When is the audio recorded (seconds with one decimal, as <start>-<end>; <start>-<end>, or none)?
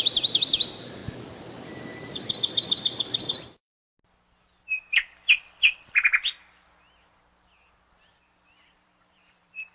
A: 3.9-8.0